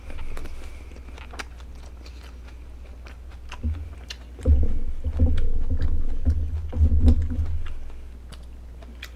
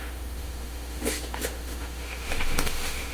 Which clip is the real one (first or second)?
first